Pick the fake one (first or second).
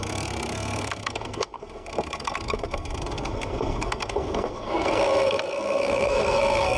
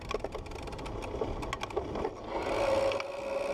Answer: first